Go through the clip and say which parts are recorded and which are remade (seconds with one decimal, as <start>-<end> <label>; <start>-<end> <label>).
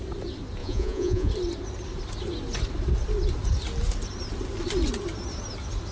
0.0-0.6 recorded; 0.6-1.3 remade; 1.3-5.9 recorded